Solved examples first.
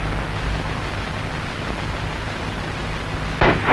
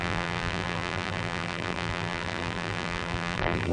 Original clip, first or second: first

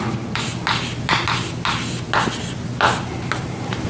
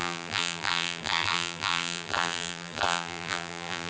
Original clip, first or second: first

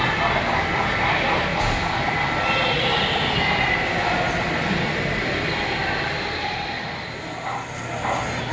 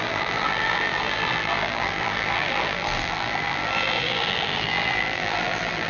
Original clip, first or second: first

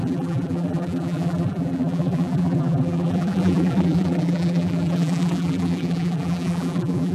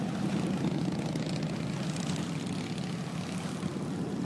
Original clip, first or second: second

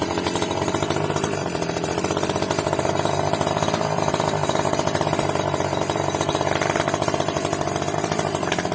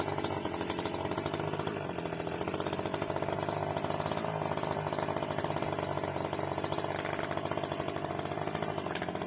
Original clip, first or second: second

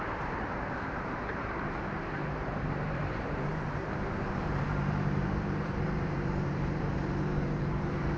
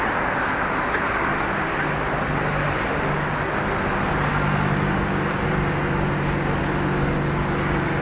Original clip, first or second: second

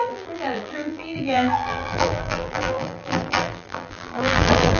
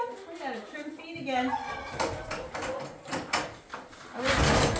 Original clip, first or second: second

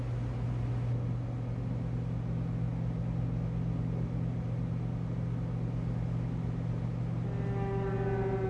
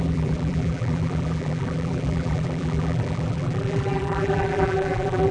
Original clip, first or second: first